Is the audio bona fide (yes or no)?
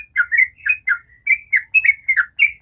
yes